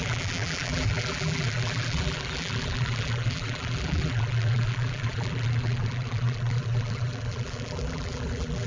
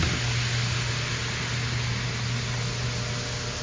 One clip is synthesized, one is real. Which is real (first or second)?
second